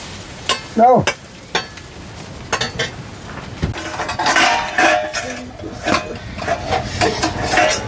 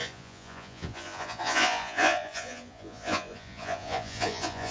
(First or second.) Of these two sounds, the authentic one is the first